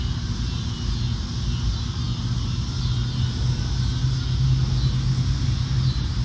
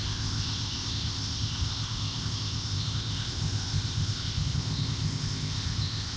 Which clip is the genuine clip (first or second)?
first